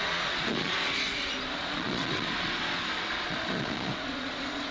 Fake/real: fake